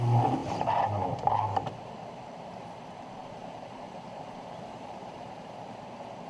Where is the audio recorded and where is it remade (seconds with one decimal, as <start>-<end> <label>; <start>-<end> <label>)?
0.0-3.2 recorded; 3.2-5.5 remade; 5.5-6.3 recorded